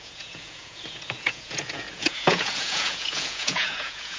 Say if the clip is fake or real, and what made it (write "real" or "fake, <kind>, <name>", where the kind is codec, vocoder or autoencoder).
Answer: fake, vocoder, Vocos